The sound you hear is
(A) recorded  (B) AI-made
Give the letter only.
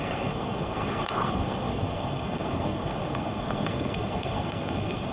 B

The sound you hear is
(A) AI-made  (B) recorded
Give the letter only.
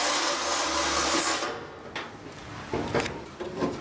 B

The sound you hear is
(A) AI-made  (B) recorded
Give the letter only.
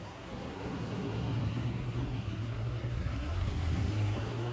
A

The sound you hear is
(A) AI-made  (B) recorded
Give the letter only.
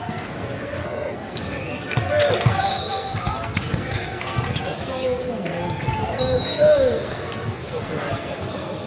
A